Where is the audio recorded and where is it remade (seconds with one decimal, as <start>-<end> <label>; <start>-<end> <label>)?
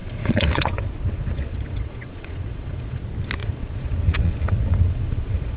0.0-3.0 remade; 3.0-3.4 recorded; 3.4-5.6 remade